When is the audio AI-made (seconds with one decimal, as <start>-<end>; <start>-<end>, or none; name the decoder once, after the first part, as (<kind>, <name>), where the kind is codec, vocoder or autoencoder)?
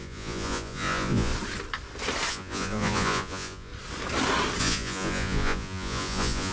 0.0-1.3 (vocoder, Vocos); 2.3-3.7; 4.6-6.5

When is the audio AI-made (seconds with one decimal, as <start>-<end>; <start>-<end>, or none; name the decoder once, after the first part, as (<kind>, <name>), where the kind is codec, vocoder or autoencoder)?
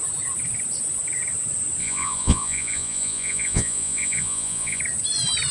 1.8-4.8 (vocoder, Vocos)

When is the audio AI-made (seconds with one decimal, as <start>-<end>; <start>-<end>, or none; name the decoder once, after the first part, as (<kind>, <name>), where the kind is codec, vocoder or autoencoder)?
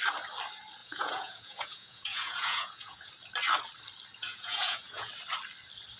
0.8-3.1 (vocoder, Vocos); 4.2-5.1